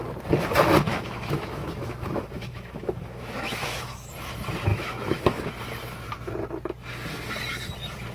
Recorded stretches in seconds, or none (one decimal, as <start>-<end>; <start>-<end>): 0.0-0.9; 4.1-4.7; 5.5-8.1